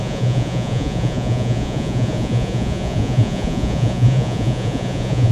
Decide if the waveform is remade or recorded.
remade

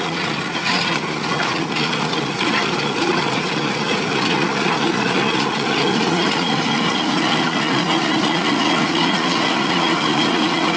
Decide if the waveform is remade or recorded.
remade